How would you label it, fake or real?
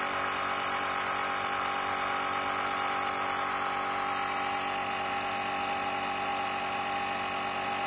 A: real